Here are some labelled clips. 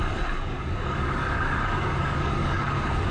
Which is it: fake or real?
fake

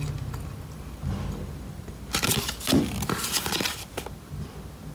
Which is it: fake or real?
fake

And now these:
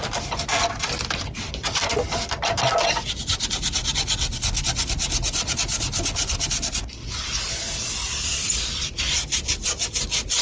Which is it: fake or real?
real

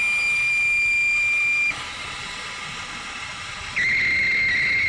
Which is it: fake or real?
real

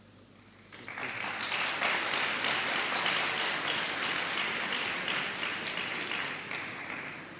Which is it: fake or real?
real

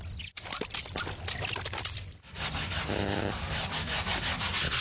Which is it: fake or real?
real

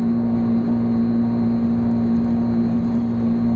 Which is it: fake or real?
real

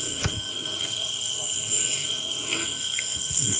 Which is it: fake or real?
fake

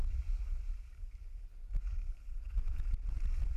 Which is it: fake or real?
real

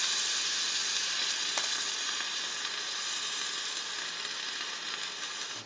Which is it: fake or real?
real